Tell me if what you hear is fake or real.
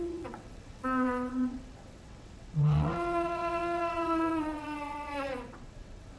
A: fake